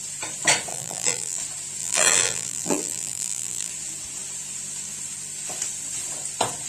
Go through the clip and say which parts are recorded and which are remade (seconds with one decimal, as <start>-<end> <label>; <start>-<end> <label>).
0.0-0.7 recorded; 0.7-1.4 remade; 1.4-1.8 recorded; 1.8-3.7 remade; 3.7-6.7 recorded